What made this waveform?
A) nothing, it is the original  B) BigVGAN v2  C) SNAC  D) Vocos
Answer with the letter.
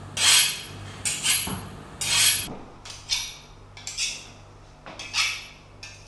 A